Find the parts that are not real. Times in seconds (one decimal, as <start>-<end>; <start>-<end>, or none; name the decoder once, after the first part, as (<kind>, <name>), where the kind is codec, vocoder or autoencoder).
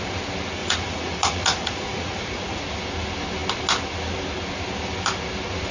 0.6-2.6 (vocoder, Vocos)